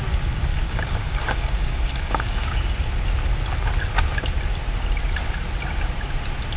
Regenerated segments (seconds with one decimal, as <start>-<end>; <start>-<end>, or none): 0.5-2.6